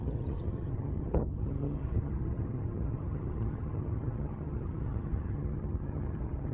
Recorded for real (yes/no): no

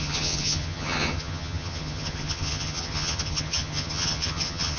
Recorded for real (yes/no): no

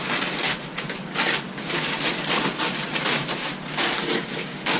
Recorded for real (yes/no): yes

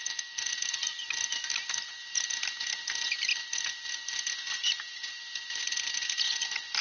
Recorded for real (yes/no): yes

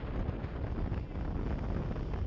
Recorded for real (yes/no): yes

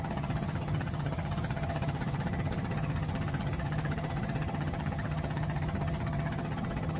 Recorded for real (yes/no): no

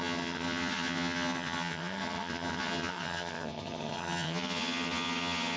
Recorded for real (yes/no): no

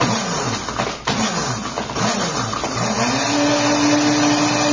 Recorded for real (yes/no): yes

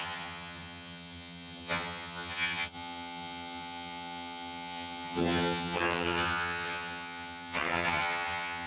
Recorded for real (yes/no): no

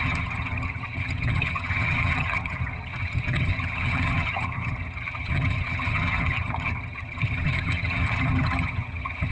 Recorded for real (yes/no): no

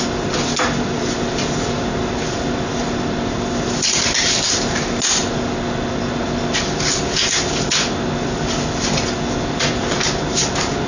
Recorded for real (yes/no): yes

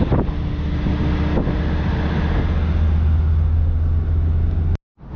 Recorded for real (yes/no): yes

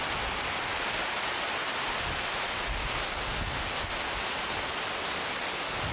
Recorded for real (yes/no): yes